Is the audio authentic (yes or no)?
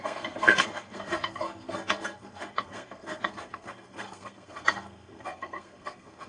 no